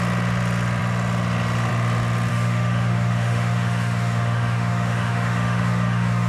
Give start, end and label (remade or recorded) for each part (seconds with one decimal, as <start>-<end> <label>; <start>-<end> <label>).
0.0-2.3 recorded; 2.3-6.3 remade

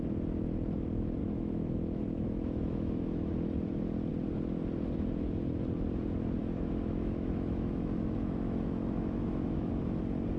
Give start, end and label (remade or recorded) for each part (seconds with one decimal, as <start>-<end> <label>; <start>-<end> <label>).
0.0-1.2 recorded; 1.2-3.3 remade; 3.3-6.4 recorded; 6.4-9.7 remade; 9.7-10.4 recorded

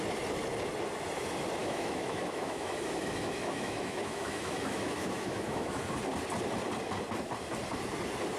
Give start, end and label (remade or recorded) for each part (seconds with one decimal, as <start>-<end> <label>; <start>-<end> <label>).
0.0-1.6 recorded; 1.6-5.8 remade; 5.8-8.4 recorded

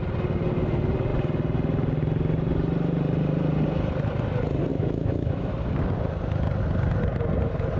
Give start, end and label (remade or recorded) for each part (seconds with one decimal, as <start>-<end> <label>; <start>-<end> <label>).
0.0-4.7 recorded; 4.7-5.5 remade; 5.5-7.8 recorded

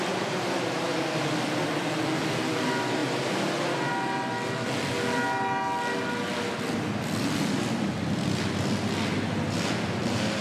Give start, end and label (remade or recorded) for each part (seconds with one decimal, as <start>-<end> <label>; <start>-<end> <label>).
0.0-10.4 recorded

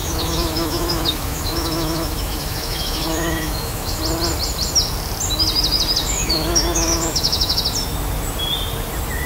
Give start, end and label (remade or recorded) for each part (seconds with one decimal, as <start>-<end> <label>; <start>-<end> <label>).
0.0-4.0 remade; 4.0-6.0 recorded; 6.0-7.6 remade; 7.6-9.3 recorded

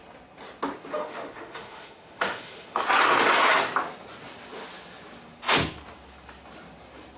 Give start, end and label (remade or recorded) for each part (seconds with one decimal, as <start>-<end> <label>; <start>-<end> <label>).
0.0-1.0 recorded; 1.0-2.8 remade; 2.8-7.2 recorded

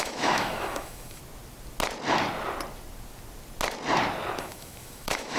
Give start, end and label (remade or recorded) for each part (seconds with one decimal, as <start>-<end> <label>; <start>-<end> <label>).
0.0-1.2 remade; 1.2-4.4 recorded; 4.4-5.4 remade